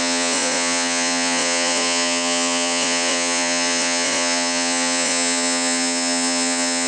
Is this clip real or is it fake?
fake